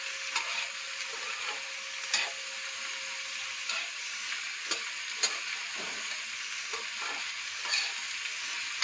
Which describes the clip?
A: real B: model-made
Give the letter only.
A